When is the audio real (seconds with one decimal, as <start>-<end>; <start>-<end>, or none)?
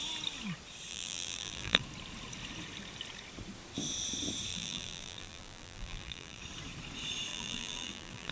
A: 0.0-0.9; 1.8-4.5; 6.4-7.3